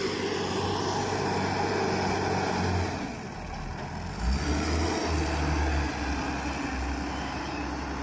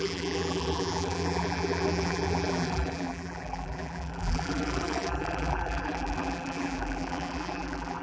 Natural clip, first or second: first